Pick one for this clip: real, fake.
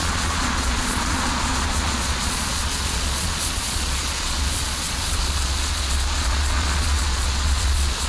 fake